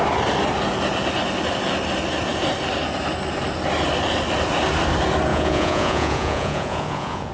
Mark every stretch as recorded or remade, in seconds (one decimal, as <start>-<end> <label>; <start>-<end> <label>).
0.0-5.3 recorded; 5.3-7.3 remade